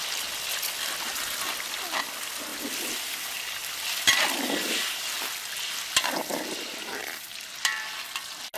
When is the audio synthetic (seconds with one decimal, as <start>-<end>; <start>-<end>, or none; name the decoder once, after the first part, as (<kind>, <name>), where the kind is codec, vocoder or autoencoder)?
none